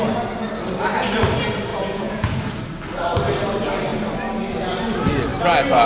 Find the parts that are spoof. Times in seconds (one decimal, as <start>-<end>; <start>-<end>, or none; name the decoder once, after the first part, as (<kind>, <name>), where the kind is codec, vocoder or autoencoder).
1.7-2.4 (vocoder, Vocos)